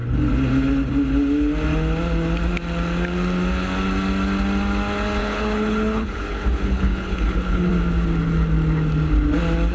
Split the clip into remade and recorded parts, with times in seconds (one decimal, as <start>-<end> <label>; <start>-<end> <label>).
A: 0.0-5.2 recorded; 5.2-7.7 remade; 7.7-9.7 recorded